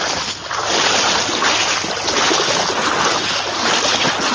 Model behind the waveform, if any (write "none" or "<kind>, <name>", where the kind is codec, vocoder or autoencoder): none